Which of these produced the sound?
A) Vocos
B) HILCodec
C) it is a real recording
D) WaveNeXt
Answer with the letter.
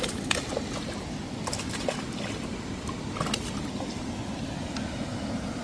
C